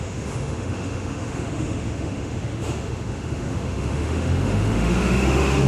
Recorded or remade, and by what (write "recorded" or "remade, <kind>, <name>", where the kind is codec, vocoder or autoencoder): remade, autoencoder, DAC-VAE